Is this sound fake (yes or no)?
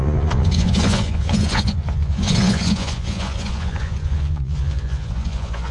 yes